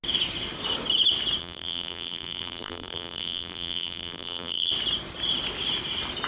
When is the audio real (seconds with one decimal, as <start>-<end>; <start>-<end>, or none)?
0.0-1.4; 4.7-6.3